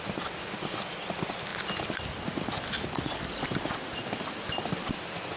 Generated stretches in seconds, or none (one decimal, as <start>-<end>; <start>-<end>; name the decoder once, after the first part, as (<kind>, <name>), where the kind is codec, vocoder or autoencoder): none